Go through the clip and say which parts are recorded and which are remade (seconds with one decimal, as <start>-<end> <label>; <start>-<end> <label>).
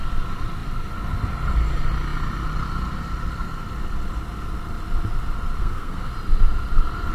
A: 0.0-5.6 recorded; 5.6-6.1 remade; 6.1-7.1 recorded